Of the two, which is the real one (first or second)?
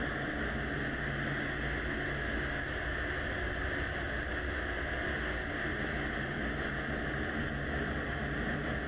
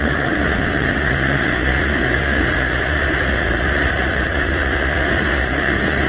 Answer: first